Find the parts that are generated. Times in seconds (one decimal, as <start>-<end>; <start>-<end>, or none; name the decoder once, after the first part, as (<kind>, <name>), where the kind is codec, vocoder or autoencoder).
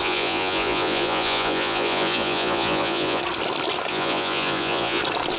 0.0-3.2 (vocoder, Vocos); 3.9-5.0